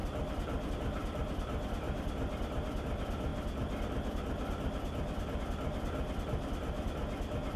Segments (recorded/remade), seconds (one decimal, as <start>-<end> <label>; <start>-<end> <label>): 0.0-7.6 recorded

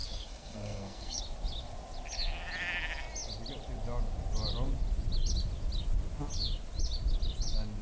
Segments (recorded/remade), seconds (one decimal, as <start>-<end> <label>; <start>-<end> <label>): 0.0-1.2 remade; 1.2-7.8 recorded

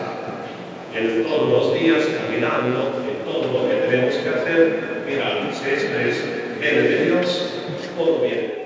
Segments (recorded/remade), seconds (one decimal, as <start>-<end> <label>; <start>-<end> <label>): 0.0-0.8 recorded; 0.8-2.9 remade; 2.9-8.7 recorded

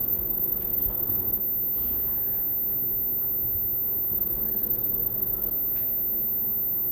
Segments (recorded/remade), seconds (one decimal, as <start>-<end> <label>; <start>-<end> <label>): 0.0-1.4 remade; 1.4-4.1 recorded; 4.1-5.5 remade; 5.5-6.9 recorded

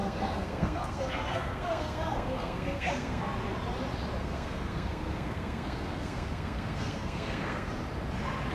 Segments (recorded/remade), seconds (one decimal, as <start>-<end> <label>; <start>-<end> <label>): 0.0-3.2 remade; 3.2-4.2 recorded; 4.2-7.7 remade; 7.7-8.5 recorded